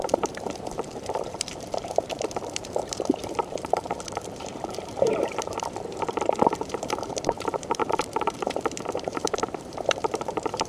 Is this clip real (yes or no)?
no